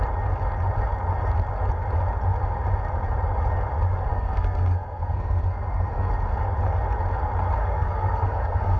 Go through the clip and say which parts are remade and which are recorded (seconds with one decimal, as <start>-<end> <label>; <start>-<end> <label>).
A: 0.0-4.1 recorded; 4.1-6.1 remade; 6.1-7.6 recorded; 7.6-8.8 remade